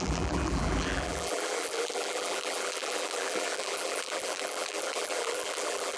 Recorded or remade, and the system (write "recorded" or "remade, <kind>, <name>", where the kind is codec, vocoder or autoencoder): remade, vocoder, BigVGAN v2